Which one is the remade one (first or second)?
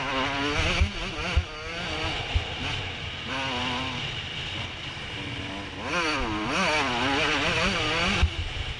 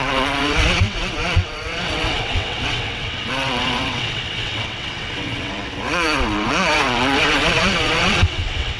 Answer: second